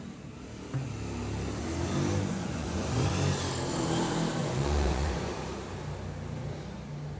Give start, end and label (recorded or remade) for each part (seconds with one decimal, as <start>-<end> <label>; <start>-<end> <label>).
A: 0.0-2.3 recorded; 2.3-3.1 remade; 3.1-4.4 recorded; 4.4-5.3 remade; 5.3-7.2 recorded